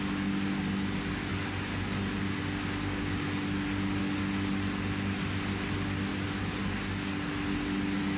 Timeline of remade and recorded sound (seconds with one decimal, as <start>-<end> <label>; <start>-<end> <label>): 0.0-8.2 recorded